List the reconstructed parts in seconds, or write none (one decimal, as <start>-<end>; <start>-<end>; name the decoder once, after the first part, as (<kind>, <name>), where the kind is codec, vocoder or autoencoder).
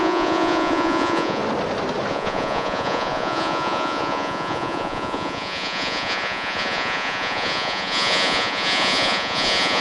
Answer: 0.0-1.4 (vocoder, Vocos); 2.1-9.8